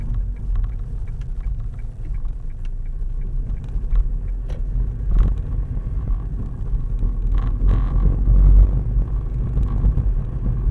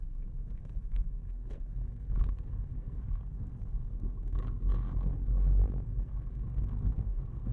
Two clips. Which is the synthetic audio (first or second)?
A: second